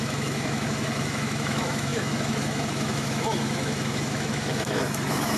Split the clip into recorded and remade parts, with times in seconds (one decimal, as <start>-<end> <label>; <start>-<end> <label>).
0.0-5.4 remade